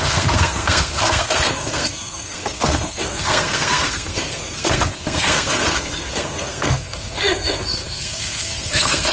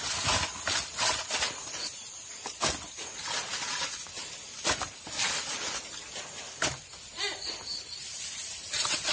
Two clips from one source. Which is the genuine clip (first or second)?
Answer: second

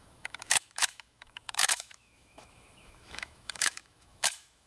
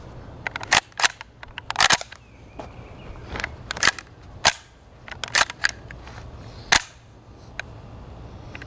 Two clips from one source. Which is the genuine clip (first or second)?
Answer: second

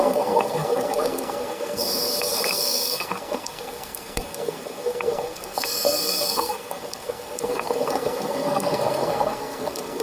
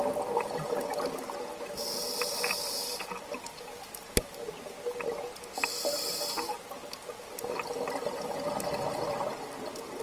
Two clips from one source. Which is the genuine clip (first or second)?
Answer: second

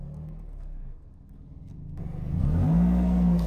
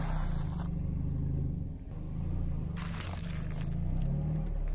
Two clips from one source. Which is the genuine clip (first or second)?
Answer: second